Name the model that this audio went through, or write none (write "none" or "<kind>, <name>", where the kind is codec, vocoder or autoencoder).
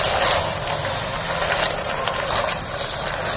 none